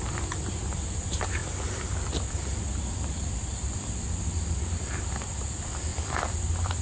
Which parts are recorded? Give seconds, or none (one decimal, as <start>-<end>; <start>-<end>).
0.0-5.9

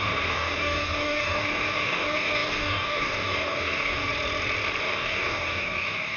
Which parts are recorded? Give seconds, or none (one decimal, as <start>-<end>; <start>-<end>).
4.1-4.8

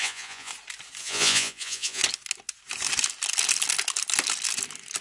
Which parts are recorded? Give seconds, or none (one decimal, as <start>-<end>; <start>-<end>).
0.5-1.0; 2.0-5.0

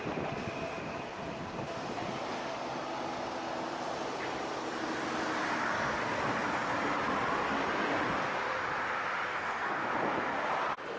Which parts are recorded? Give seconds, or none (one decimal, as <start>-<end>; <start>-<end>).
0.0-5.7; 6.2-9.3; 9.9-11.0

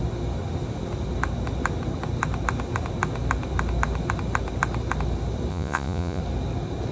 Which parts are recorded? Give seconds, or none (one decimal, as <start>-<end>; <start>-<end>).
0.0-5.5; 6.2-6.9